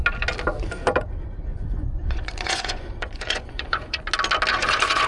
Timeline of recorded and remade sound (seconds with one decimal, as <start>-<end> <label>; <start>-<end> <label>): 0.0-1.5 recorded; 1.5-4.0 remade; 4.0-4.5 recorded; 4.5-5.1 remade